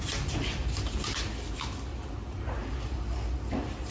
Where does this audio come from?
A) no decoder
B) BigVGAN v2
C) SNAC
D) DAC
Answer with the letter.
A